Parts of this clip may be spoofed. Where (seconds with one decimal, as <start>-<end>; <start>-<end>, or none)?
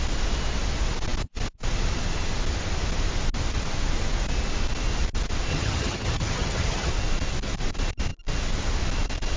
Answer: 5.5-6.9